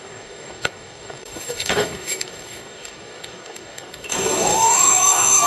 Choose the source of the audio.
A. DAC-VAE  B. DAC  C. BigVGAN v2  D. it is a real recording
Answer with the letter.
B